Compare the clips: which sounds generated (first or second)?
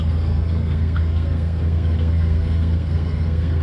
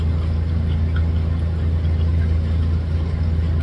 first